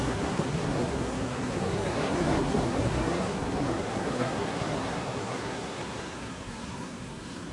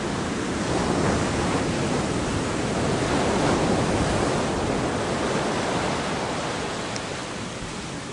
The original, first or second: second